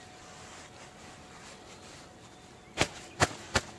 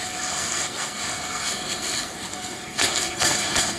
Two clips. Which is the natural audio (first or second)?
first